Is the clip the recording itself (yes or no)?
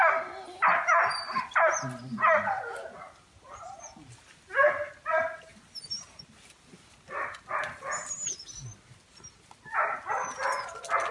yes